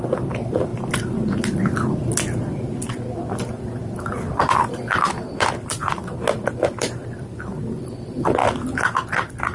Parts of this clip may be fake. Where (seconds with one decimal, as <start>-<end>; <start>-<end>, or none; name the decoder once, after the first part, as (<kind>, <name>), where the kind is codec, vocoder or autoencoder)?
0.0-0.7 (vocoder, BigVGAN v2); 3.5-8.4; 9.1-9.5